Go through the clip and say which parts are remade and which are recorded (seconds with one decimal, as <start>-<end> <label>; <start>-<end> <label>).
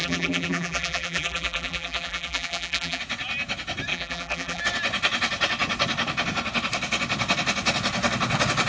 0.0-3.0 remade; 3.0-3.9 recorded; 3.9-4.6 remade; 4.6-8.7 recorded